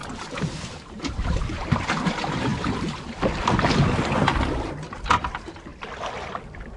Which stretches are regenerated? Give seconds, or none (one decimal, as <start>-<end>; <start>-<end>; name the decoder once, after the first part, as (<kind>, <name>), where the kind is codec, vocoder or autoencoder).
1.7-2.5 (vocoder, BigVGAN v2); 5.1-5.7